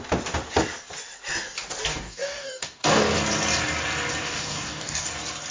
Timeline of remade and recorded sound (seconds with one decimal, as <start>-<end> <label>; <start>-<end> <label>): 0.0-1.9 recorded; 1.9-3.0 remade; 3.0-4.2 recorded; 4.2-5.1 remade; 5.1-5.5 recorded